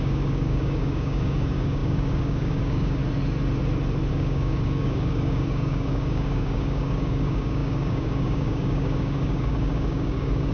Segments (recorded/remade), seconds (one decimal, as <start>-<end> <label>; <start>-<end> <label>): 0.0-3.0 remade; 3.0-4.1 recorded; 4.1-10.5 remade